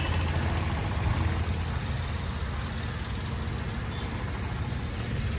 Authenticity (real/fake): real